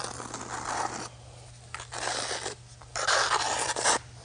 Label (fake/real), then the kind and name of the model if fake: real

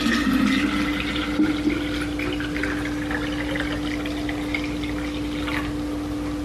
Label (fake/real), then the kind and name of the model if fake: real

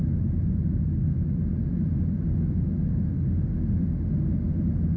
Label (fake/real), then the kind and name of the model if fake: real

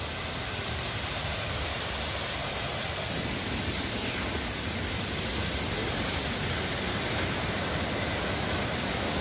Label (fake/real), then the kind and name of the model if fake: real